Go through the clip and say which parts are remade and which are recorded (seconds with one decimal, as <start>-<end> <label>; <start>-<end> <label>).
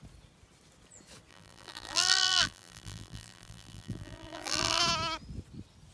0.0-1.3 recorded; 1.3-4.8 remade; 4.8-5.9 recorded